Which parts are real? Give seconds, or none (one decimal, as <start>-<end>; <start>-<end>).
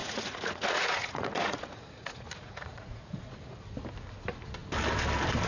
3.3-5.5